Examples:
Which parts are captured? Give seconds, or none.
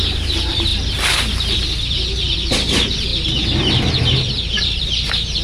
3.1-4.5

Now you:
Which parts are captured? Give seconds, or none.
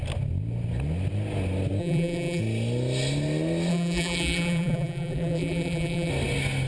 0.0-1.8; 2.4-3.7; 6.1-6.7